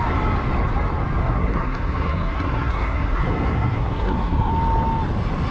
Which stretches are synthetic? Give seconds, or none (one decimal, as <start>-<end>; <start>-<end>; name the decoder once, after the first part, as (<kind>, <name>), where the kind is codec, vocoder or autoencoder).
1.2-4.5 (codec, SNAC)